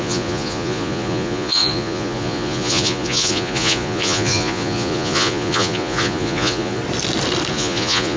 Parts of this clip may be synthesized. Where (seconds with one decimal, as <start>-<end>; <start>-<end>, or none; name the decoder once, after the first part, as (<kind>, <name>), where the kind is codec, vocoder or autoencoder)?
0.0-6.8 (vocoder, Vocos); 7.5-8.2